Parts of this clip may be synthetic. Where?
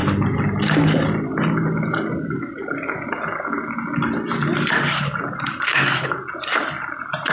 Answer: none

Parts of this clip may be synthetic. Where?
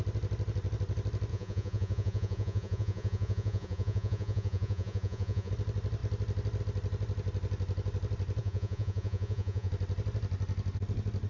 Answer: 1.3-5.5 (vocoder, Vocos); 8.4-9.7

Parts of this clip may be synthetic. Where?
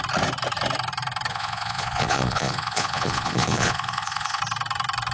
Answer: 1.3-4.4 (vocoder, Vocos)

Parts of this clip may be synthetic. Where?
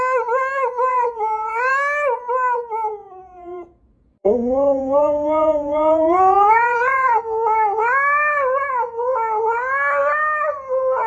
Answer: 0.9-1.7 (vocoder, Vocos); 3.0-7.2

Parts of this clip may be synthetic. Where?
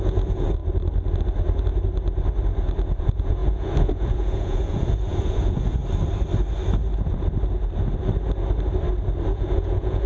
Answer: 0.0-0.6 (vocoder, Vocos); 3.0-5.8; 9.3-10.1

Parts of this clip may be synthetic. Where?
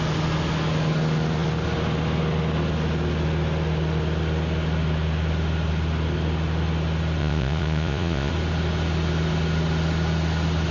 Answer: 7.2-8.3 (vocoder, Vocos)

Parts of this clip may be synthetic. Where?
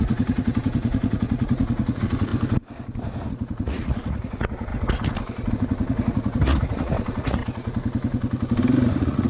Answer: 0.0-2.3 (vocoder, Vocos); 3.3-4.7; 5.5-7.4; 8.9-9.3